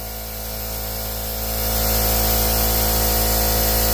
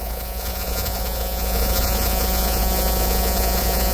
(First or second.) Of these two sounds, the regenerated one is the second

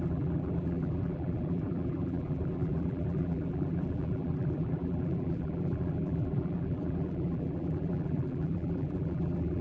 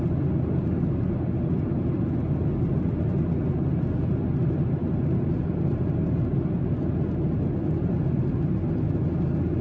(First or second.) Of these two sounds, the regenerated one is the first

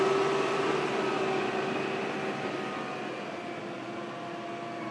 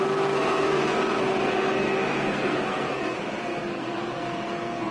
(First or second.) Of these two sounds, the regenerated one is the second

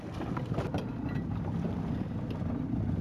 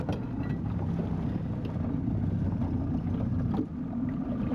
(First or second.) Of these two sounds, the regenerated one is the first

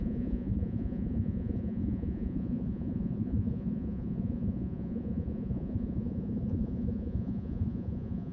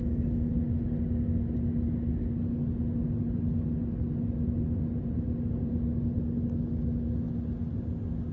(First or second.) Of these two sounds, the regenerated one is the first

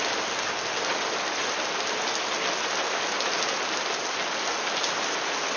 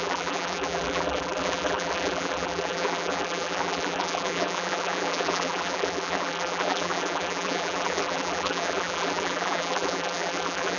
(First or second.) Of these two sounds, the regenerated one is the second